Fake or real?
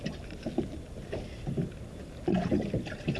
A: real